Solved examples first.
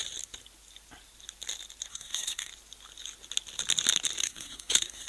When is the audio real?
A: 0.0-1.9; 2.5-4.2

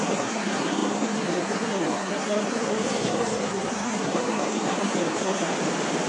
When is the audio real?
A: 5.5-6.1

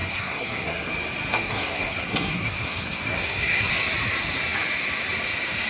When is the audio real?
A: 0.9-1.3; 3.7-5.7

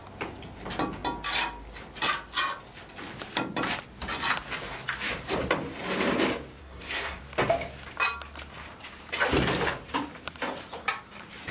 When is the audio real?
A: 0.0-6.6; 7.2-11.5

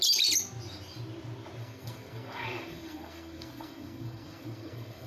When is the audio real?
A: 0.0-1.6